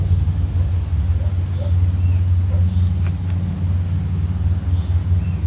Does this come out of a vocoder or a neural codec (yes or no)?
no